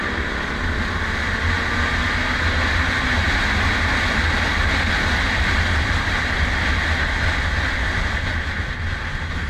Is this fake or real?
real